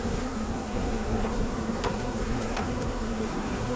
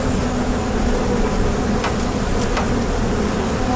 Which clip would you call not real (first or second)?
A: first